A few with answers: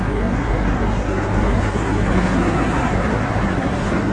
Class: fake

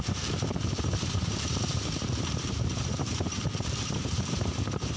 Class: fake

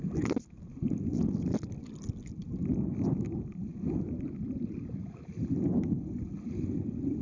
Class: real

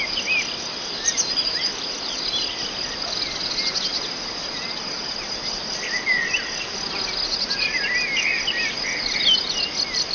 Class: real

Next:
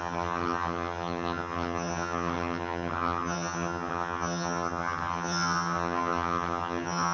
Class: fake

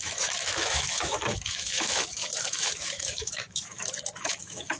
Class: fake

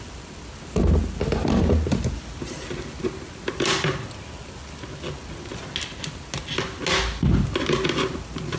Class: real